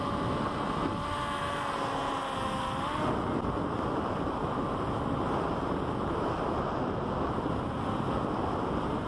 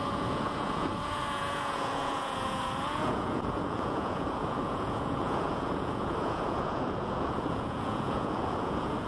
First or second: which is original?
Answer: first